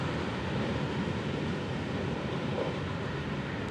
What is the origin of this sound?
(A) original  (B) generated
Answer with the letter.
B